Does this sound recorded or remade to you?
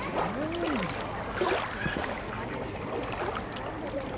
recorded